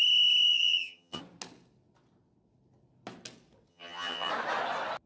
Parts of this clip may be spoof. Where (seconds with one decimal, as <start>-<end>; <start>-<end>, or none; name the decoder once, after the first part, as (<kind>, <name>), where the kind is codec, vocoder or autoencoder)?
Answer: 0.5-1.2 (vocoder, HiFi-GAN); 3.7-4.3